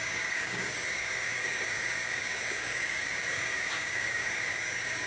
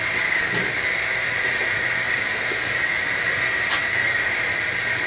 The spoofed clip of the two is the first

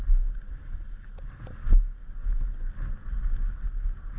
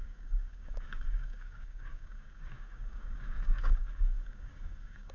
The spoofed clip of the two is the second